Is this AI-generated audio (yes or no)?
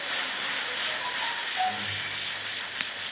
no